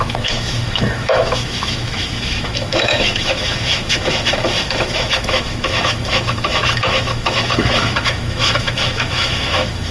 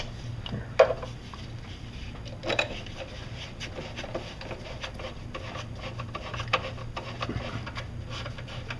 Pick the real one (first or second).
second